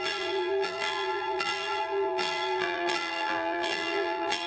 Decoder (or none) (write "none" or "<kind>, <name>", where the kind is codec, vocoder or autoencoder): vocoder, BigVGAN v2